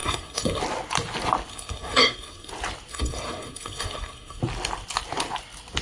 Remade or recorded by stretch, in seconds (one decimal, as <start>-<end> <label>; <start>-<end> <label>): 0.0-0.6 remade; 0.6-1.5 recorded; 1.5-2.5 remade; 2.5-2.9 recorded; 2.9-4.4 remade; 4.4-5.8 recorded